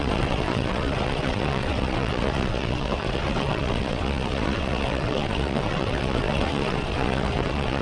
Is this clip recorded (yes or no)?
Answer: no